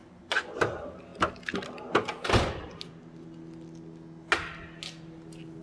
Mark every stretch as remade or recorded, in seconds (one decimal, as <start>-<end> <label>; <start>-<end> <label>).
0.0-0.6 remade; 0.6-5.6 recorded